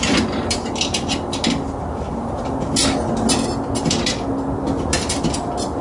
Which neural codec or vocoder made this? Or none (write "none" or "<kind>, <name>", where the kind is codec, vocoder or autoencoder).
none